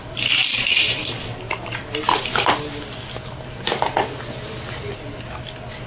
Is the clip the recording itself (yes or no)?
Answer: yes